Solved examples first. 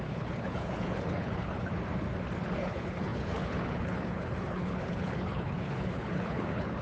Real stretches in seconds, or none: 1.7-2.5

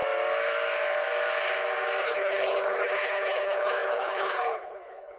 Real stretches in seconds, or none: 0.0-2.0

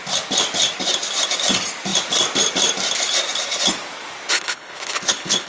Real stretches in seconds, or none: 0.0-4.3

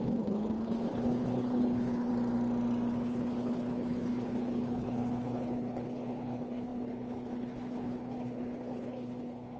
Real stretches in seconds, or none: 2.1-2.9

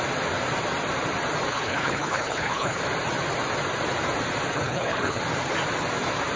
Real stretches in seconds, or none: 0.0-1.5; 2.8-4.5; 5.2-6.4